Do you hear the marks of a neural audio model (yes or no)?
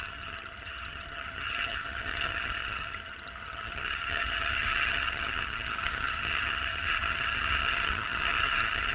yes